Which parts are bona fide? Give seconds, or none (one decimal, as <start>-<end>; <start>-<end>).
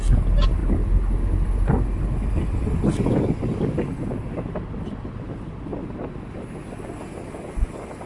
0.0-8.1